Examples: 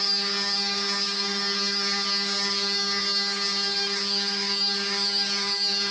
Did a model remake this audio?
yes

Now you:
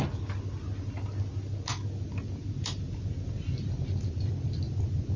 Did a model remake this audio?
no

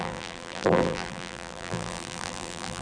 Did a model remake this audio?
yes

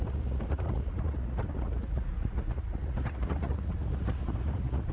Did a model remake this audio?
yes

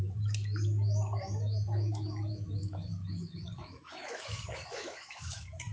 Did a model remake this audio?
yes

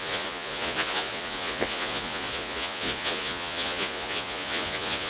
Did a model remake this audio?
yes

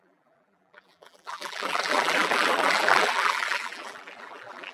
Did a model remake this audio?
yes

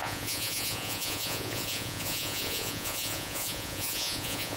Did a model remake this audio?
yes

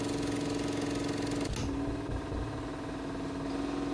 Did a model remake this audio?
no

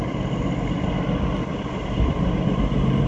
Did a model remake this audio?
no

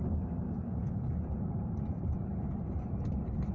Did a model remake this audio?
no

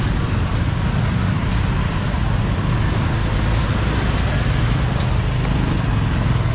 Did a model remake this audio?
no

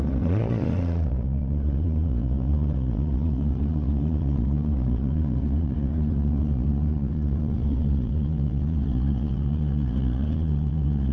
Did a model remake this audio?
yes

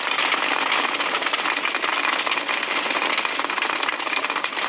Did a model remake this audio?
no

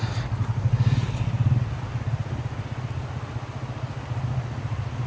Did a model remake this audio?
no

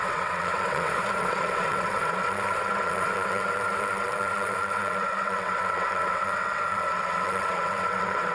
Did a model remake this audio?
yes